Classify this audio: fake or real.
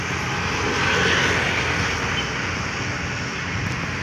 real